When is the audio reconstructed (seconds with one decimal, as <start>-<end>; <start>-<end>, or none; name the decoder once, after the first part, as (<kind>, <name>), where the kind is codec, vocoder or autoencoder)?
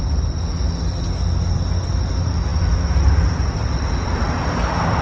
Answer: none